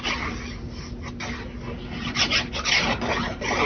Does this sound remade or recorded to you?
recorded